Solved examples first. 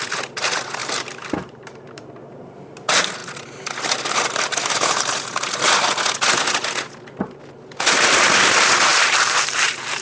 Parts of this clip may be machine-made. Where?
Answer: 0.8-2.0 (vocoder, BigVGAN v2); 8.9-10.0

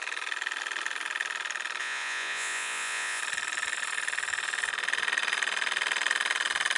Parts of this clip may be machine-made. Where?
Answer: 1.8-3.2 (vocoder, Vocos)